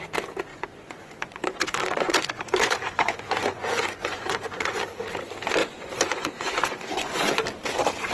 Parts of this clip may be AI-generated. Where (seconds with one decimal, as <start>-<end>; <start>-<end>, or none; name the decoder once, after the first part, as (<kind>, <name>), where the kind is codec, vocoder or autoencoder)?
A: 0.5-4.8 (vocoder, Vocos); 5.6-7.3